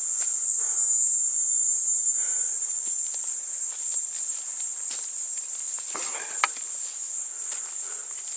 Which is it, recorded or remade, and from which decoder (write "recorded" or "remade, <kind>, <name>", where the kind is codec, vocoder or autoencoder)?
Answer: recorded